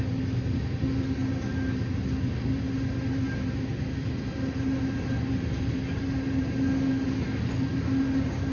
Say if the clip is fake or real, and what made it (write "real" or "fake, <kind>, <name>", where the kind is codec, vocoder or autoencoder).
real